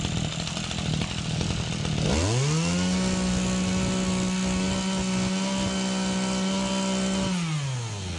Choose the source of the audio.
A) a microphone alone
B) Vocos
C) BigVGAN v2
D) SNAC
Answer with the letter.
A